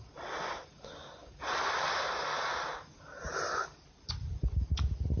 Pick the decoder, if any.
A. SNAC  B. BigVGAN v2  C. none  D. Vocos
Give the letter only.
C